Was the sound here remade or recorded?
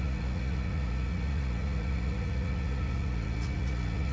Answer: remade